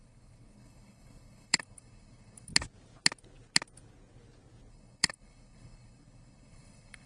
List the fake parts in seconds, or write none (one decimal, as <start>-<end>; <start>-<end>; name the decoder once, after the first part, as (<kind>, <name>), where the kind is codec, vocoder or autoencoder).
0.0-2.5 (codec, HILCodec); 4.7-7.1